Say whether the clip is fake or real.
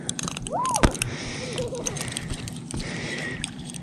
fake